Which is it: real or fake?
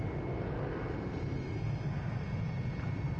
real